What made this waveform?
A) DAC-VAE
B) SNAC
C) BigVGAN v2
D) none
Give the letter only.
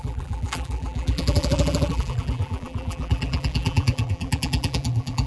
C